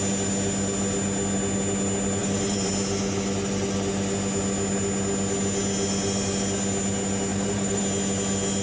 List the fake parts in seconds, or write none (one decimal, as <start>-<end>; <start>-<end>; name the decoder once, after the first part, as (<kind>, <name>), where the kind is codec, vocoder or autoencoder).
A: 2.2-2.7 (vocoder, BigVGAN v2); 7.3-7.8